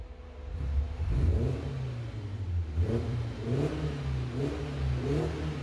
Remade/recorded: recorded